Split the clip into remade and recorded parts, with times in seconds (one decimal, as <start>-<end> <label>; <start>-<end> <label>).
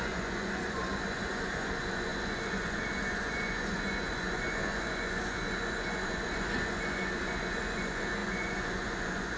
0.0-9.4 remade